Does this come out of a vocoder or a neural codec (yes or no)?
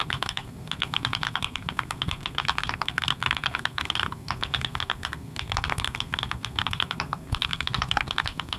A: yes